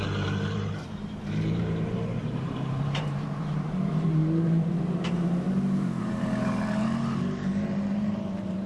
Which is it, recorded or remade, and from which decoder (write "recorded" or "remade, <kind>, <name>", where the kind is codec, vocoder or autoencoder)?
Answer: remade, vocoder, BigVGAN v2